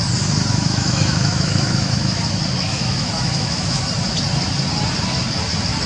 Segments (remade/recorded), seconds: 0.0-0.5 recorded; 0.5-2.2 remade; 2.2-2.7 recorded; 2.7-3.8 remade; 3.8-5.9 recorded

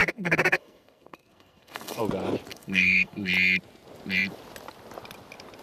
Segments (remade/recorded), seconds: 0.0-2.0 remade; 2.0-2.5 recorded; 2.5-3.3 remade; 3.3-5.6 recorded

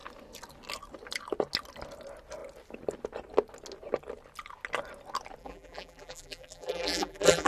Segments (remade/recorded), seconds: 0.0-5.4 recorded; 5.4-7.5 remade

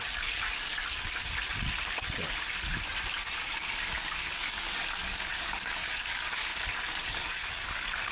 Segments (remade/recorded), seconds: 0.0-0.7 remade; 0.7-3.6 recorded; 3.6-6.5 remade; 6.5-7.0 recorded; 7.0-8.1 remade

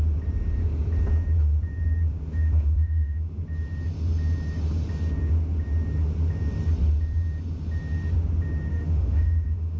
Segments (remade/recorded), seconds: 0.0-2.4 recorded; 2.4-3.4 remade; 3.4-8.7 recorded; 8.7-9.8 remade